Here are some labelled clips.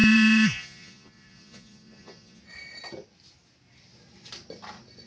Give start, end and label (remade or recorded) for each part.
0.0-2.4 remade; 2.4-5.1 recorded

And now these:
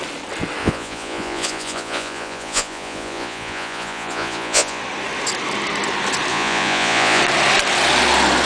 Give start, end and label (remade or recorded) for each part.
0.0-0.6 recorded; 0.6-4.8 remade; 4.8-6.3 recorded; 6.3-7.2 remade; 7.2-8.4 recorded

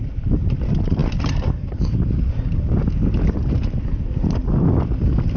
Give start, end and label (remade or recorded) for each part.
0.0-5.4 recorded

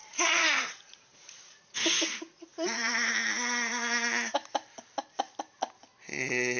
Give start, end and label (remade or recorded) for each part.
0.0-3.1 remade; 3.1-6.6 recorded

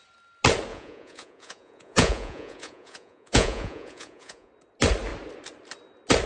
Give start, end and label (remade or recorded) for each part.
0.0-0.7 recorded; 0.7-4.5 remade; 4.5-6.3 recorded

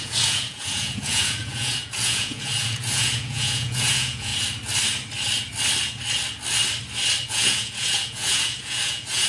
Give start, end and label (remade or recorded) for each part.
0.0-4.3 remade; 4.3-7.3 recorded; 7.3-9.3 remade